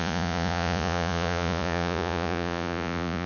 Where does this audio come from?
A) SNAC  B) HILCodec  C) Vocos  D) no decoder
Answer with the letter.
C